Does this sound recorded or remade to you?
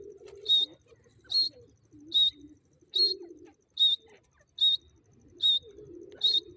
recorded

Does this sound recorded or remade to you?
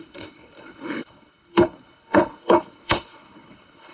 remade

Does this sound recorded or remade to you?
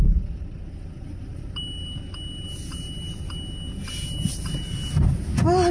recorded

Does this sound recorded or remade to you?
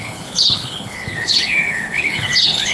remade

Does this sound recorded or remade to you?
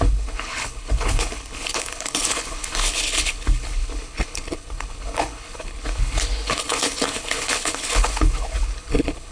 remade